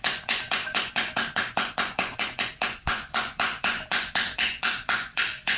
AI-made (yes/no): yes